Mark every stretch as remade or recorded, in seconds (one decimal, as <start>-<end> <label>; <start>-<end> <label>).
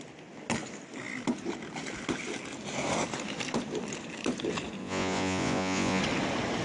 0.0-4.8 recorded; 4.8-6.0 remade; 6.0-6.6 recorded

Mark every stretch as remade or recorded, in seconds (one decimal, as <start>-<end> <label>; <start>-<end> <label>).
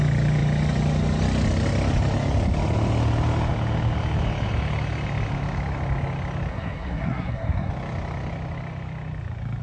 0.0-6.5 recorded; 6.5-7.7 remade; 7.7-9.6 recorded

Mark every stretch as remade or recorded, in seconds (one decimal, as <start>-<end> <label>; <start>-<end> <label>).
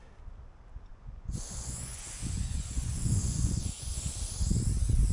0.0-0.9 recorded; 0.9-4.0 remade; 4.0-5.1 recorded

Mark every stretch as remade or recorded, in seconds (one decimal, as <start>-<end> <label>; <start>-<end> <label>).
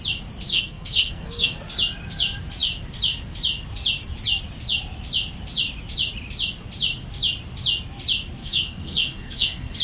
0.0-0.5 recorded; 0.5-1.6 remade; 1.6-8.4 recorded; 8.4-9.8 remade